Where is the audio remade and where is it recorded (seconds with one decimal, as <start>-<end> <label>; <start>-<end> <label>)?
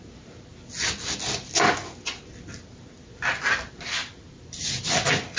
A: 0.0-5.4 recorded